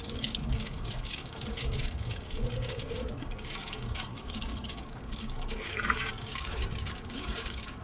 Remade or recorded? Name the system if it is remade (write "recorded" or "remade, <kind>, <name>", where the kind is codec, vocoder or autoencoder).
remade, codec, DAC